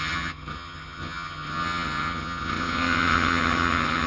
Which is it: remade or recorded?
remade